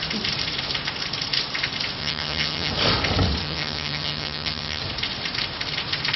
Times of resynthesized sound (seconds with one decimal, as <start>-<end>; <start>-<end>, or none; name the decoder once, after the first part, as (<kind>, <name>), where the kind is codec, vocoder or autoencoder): 2.0-2.7 (vocoder, HiFi-GAN); 3.4-4.8